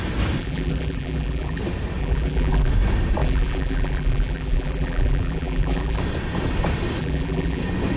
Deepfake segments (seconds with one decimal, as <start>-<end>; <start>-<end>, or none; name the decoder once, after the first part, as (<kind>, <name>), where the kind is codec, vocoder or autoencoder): 0.4-1.6 (vocoder, BigVGAN v2); 2.0-2.7; 3.2-6.0; 7.0-7.6